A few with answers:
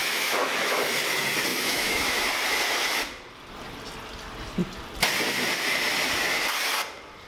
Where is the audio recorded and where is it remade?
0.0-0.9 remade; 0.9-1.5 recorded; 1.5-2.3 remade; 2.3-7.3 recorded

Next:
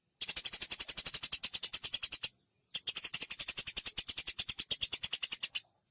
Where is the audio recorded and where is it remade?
0.0-5.9 recorded

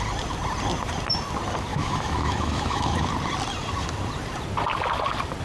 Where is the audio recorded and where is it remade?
0.0-1.7 recorded; 1.7-3.1 remade; 3.1-5.4 recorded